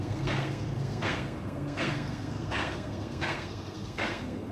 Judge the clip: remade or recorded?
remade